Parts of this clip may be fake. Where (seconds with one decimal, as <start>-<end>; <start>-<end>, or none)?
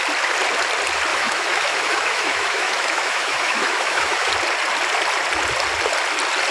1.1-4.3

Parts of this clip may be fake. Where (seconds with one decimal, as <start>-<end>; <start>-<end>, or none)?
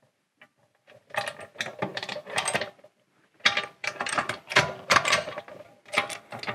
1.9-2.7; 3.8-5.4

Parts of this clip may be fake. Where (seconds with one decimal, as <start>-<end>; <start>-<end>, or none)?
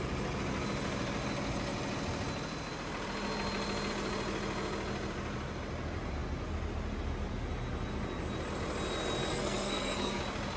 9.3-10.2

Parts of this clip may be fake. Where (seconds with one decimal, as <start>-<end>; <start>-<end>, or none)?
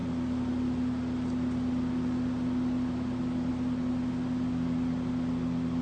none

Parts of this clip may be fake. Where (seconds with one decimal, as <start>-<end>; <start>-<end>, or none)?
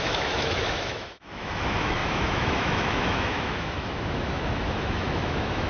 0.0-5.7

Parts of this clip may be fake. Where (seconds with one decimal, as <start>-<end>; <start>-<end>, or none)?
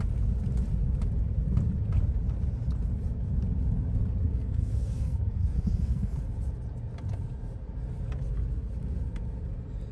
4.3-6.2